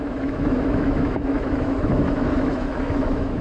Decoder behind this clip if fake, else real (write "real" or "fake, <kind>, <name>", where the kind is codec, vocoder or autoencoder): fake, autoencoder, DAC-VAE